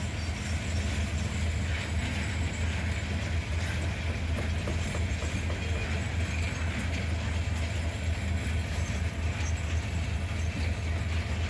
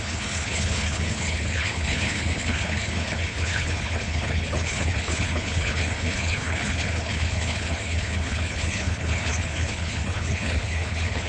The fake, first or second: second